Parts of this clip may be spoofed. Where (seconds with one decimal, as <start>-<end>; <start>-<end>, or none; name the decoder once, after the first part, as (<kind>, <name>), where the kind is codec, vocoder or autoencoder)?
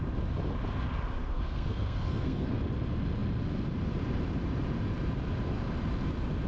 1.2-2.6 (codec, SNAC)